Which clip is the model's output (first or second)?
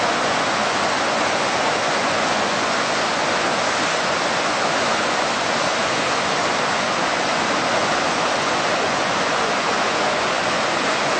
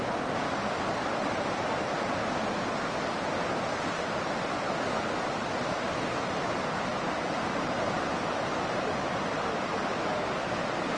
first